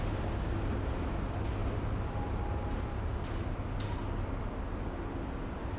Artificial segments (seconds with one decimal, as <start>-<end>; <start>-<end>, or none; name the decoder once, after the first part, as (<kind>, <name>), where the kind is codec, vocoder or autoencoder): 1.6-4.5 (vocoder, BigVGAN v2)